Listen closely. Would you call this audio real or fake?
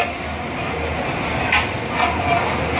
real